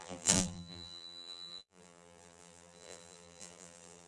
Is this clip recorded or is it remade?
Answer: remade